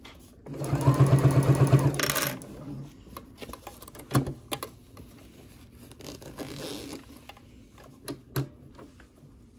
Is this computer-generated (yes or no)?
no